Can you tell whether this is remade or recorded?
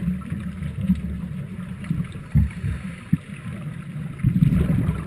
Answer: recorded